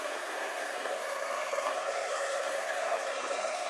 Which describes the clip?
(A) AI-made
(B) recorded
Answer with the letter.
A